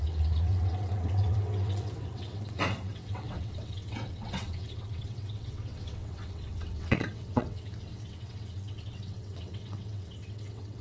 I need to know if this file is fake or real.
fake